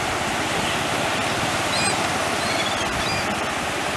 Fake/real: real